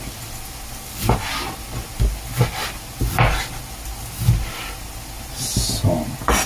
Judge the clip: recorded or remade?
recorded